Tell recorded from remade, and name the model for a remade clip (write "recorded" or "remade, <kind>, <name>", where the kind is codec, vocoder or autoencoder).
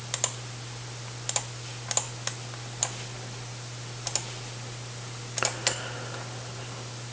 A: recorded